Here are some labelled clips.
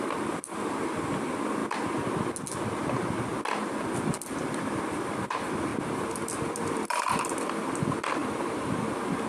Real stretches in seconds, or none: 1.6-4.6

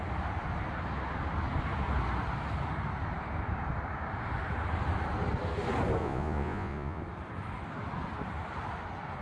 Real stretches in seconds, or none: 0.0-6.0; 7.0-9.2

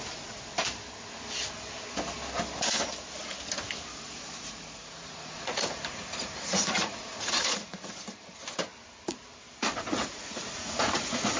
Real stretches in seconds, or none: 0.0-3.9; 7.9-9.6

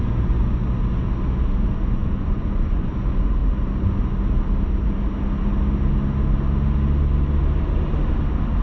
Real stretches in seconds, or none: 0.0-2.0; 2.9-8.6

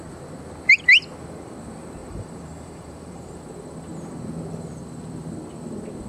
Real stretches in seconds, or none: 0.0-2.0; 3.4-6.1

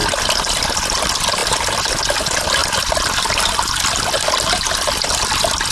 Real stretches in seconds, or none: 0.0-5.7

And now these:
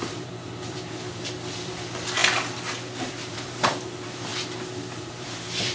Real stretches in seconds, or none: 2.2-3.0; 4.3-5.0

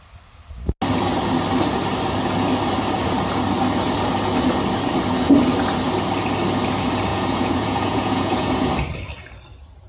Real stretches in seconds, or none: 0.0-7.1; 8.7-9.9